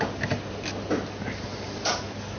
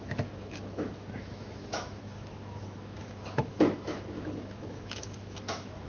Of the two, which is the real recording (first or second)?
first